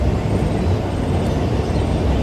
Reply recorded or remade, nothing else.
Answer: recorded